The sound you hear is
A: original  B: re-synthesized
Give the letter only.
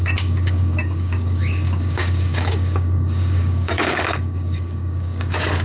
B